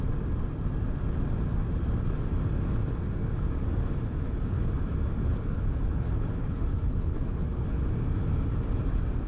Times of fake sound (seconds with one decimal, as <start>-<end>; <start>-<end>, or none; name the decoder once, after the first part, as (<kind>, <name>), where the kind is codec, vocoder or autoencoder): 5.2-7.8 (codec, HILCodec)